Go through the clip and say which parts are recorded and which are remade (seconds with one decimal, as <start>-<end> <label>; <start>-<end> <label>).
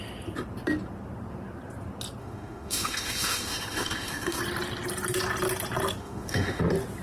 0.0-2.2 recorded; 2.2-4.4 remade; 4.4-6.0 recorded; 6.0-6.6 remade; 6.6-7.0 recorded